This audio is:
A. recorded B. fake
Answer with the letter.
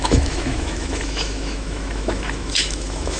B